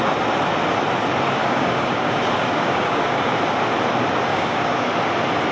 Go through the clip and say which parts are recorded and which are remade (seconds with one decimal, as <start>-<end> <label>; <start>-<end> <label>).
0.0-1.4 recorded; 1.4-3.3 remade; 3.3-4.3 recorded; 4.3-4.9 remade; 4.9-5.5 recorded